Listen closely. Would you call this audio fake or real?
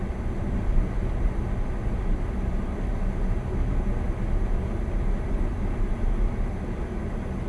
real